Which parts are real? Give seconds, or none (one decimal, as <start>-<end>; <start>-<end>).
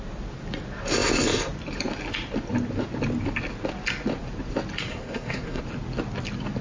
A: 0.0-4.9; 5.6-6.6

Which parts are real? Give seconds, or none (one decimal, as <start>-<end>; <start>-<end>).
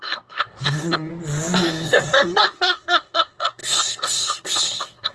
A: 1.1-1.7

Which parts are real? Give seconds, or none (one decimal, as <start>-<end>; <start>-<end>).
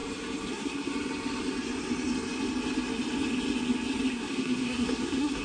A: 0.0-0.5; 0.9-4.1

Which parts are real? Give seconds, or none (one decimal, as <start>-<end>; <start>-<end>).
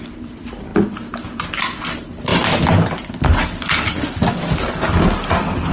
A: 0.0-5.7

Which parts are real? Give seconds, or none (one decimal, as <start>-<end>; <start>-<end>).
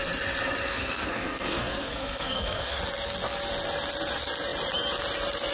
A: 0.0-0.7; 2.8-5.5